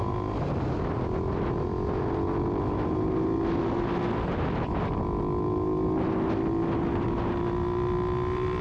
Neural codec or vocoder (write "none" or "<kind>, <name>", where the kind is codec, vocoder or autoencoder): none